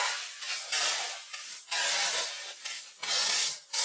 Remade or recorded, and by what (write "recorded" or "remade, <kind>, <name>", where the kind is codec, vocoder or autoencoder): recorded